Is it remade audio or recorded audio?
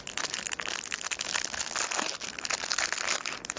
recorded